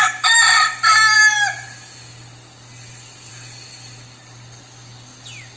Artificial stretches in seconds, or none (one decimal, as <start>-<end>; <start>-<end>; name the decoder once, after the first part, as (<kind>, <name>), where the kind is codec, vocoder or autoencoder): none